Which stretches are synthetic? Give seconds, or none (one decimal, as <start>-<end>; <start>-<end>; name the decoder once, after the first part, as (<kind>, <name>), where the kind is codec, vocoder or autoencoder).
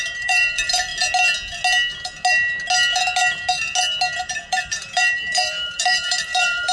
0.0-0.9 (vocoder, BigVGAN v2); 4.2-6.7